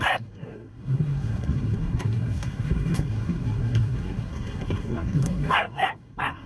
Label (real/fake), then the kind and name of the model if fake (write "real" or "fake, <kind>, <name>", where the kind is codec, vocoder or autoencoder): fake, codec, SNAC